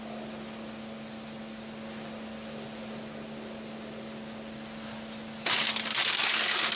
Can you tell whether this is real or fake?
real